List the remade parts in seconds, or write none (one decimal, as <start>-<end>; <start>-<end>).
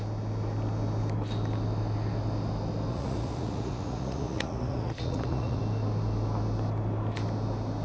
2.9-5.6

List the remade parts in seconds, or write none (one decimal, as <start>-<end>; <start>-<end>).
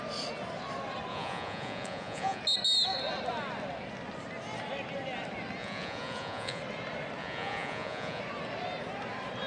1.1-2.4; 5.6-6.6; 7.2-8.2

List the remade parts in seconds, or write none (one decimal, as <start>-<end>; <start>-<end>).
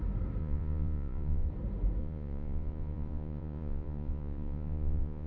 0.4-1.5; 2.0-5.3